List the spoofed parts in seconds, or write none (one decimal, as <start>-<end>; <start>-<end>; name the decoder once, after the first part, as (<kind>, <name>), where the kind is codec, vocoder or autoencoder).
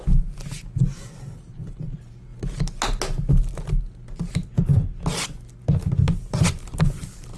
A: none